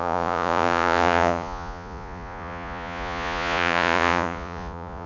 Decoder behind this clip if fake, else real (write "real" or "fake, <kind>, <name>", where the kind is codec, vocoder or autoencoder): fake, vocoder, Vocos